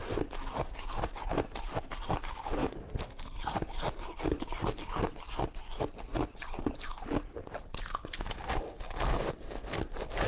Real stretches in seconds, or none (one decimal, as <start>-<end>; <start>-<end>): 0.0-10.3